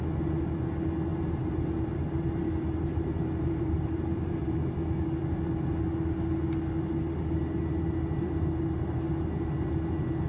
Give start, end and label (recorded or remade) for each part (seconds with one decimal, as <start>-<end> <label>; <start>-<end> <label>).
0.0-1.1 recorded; 1.1-4.5 remade; 4.5-10.3 recorded